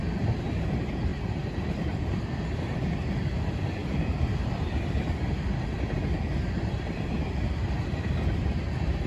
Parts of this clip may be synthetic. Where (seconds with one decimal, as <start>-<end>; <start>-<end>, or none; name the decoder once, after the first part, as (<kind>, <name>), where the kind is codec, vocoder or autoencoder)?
1.1-2.2 (vocoder, BigVGAN v2); 3.8-4.7